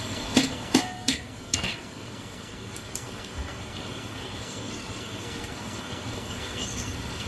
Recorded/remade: remade